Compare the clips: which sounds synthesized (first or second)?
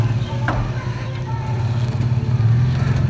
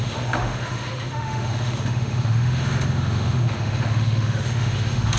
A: second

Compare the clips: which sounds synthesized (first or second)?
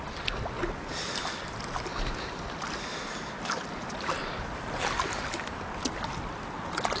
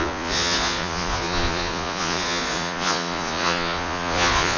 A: second